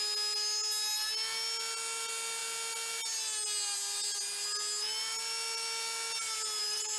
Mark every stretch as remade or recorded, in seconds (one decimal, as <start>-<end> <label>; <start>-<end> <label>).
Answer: 0.0-7.0 recorded